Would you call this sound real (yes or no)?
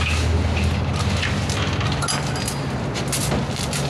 yes